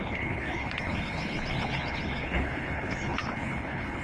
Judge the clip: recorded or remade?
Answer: remade